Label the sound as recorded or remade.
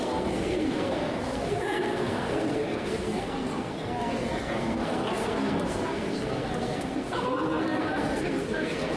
remade